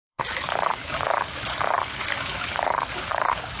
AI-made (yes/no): yes